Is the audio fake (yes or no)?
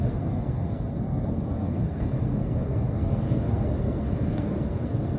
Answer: yes